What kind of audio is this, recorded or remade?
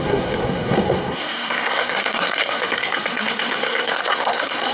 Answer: remade